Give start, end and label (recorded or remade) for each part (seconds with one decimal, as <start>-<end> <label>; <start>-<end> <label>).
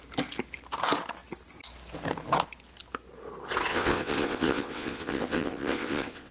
0.0-3.7 recorded; 3.7-6.3 remade